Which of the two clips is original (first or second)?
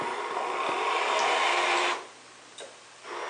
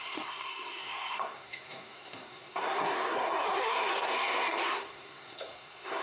first